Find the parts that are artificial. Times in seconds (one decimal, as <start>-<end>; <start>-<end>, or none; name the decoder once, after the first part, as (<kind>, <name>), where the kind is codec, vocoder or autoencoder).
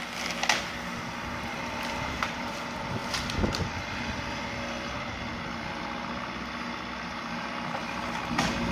none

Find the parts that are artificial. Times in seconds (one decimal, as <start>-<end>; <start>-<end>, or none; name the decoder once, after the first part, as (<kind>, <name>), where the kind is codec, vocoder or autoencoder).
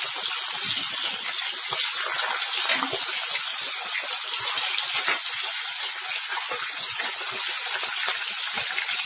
5.1-7.6 (vocoder, Vocos)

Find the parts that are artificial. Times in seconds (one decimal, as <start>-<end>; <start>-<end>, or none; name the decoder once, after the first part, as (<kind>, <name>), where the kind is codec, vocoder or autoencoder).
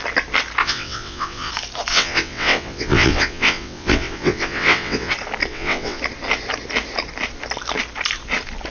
0.6-1.5 (vocoder, WaveNeXt); 1.9-5.1; 5.5-6.0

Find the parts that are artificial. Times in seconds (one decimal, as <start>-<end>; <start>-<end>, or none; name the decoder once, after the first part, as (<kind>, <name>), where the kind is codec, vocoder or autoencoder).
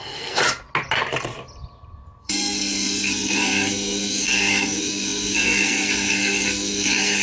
0.0-0.4 (codec, SNAC); 2.2-7.2